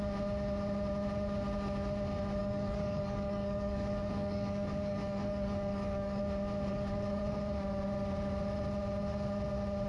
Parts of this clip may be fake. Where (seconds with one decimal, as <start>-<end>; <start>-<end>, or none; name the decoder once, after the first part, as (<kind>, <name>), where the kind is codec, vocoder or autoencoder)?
2.4-6.2 (codec, DAC); 6.7-7.2